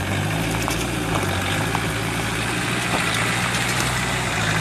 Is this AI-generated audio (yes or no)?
yes